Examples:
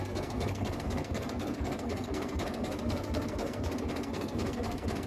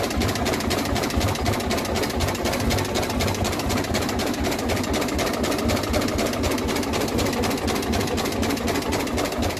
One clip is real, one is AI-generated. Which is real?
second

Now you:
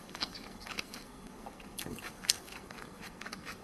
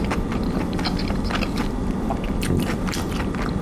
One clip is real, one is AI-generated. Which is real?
second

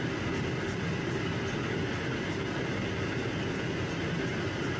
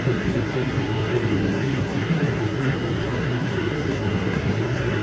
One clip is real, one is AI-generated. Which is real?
first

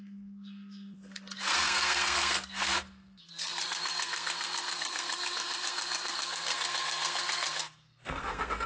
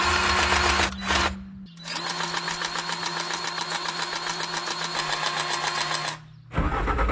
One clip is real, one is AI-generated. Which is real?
second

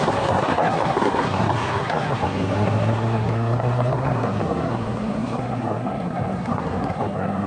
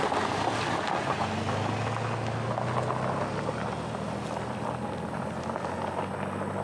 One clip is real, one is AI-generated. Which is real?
second